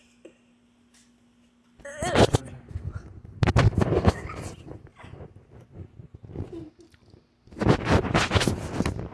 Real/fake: real